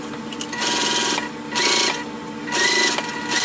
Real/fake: real